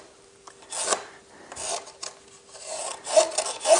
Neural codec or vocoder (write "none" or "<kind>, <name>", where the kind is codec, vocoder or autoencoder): none